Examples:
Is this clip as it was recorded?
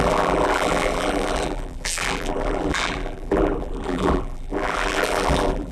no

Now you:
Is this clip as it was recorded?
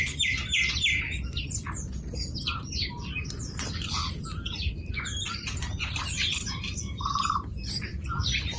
no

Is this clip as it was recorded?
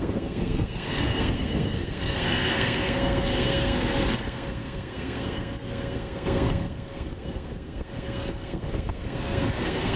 no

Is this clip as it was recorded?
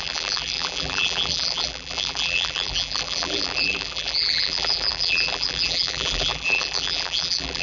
no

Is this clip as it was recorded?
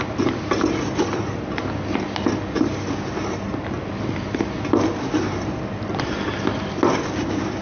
yes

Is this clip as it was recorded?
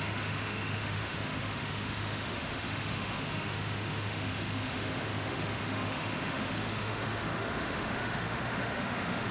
no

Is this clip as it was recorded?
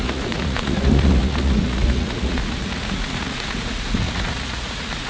no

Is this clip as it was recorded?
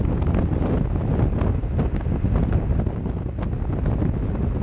yes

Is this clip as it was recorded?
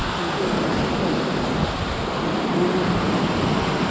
yes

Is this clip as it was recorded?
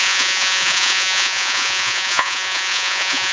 no